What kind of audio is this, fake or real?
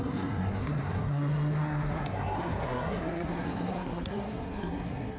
fake